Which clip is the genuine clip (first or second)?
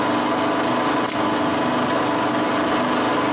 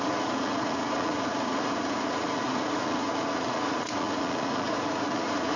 first